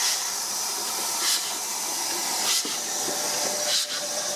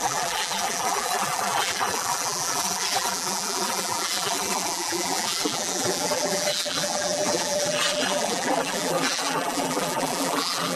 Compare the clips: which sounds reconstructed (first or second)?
second